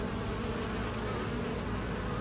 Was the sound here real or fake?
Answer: real